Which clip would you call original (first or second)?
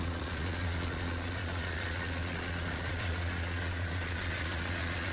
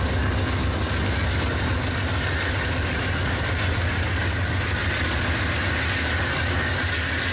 second